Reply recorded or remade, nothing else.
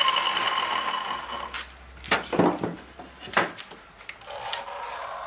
recorded